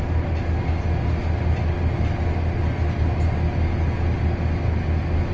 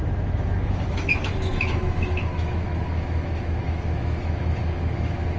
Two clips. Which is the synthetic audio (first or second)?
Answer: second